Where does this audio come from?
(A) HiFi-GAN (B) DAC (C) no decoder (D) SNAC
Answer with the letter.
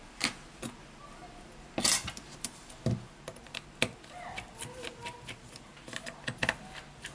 C